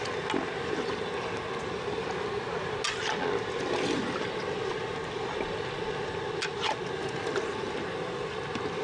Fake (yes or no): no